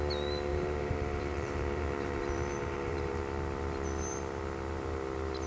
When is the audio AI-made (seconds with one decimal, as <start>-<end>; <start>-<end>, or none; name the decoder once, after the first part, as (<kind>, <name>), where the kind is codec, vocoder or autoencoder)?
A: 0.5-3.2 (vocoder, BigVGAN v2)